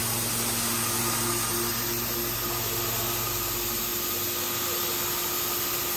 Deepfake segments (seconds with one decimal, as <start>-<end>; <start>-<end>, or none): none